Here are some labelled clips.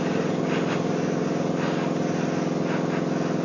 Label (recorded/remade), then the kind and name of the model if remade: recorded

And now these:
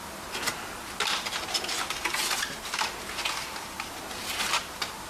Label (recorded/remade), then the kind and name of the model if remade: recorded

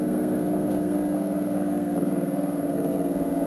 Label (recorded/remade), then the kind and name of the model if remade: remade, codec, SNAC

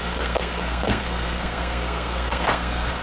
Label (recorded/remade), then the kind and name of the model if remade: remade, codec, SNAC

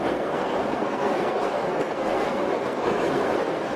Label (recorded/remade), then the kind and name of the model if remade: remade, codec, SNAC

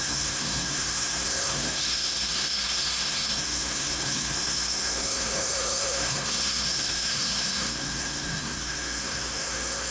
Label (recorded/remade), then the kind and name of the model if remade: remade, codec, SNAC